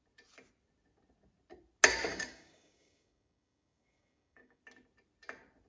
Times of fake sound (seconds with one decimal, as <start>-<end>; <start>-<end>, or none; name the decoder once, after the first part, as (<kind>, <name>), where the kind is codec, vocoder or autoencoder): 2.1-4.6 (codec, DAC)